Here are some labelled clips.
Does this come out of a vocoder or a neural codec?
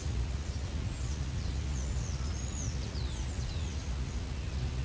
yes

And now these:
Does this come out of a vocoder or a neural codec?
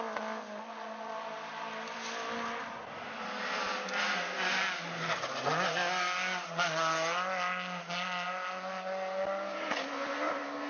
no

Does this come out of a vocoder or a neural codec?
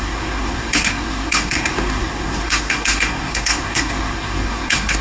yes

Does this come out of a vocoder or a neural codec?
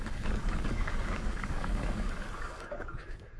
yes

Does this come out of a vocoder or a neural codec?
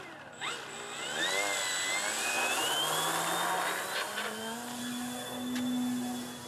no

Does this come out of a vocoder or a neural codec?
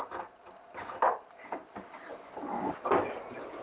no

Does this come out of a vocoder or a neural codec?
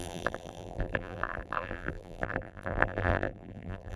yes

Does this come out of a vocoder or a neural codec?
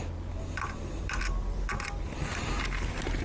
no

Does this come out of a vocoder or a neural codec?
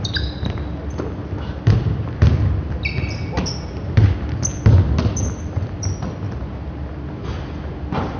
no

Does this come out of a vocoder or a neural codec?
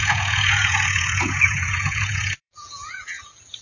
yes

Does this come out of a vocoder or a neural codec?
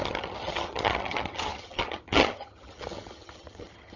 yes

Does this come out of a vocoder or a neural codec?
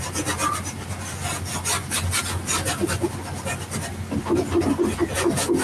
no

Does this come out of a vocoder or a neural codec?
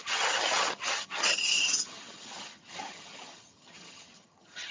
yes